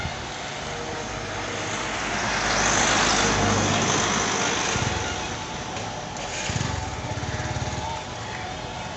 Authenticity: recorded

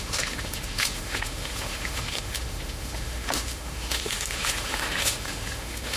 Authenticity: remade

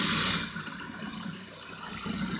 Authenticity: recorded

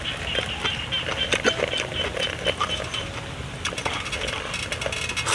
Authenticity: recorded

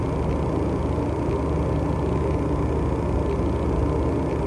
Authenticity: recorded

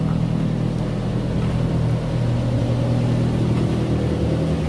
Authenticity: recorded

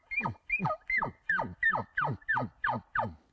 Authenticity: recorded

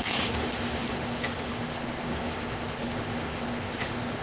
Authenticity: remade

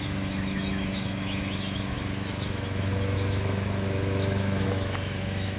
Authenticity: remade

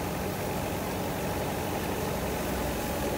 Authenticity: recorded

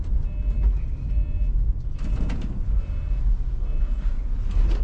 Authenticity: recorded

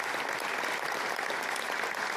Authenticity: recorded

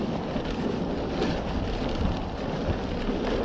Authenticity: recorded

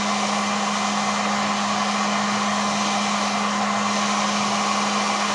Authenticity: recorded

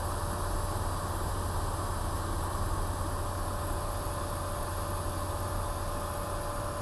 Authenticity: recorded